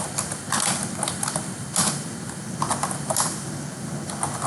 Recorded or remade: recorded